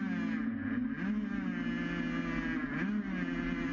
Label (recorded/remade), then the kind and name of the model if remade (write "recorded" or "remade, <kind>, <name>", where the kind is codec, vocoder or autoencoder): recorded